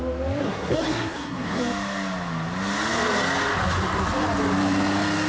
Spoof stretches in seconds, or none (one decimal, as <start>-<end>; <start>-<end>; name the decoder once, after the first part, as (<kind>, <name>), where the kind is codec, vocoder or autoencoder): 0.4-1.6 (codec, SNAC)